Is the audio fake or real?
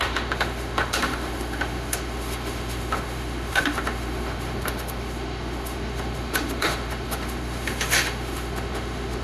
fake